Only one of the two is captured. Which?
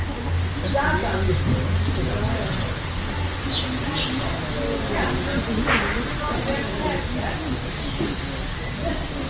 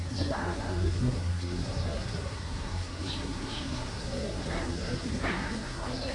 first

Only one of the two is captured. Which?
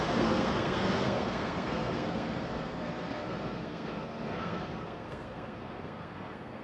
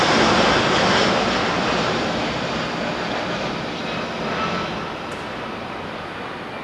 second